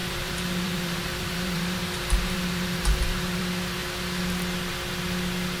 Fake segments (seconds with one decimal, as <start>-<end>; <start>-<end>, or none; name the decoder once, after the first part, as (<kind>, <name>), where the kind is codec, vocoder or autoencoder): 0.0-3.4 (vocoder, BigVGAN v2)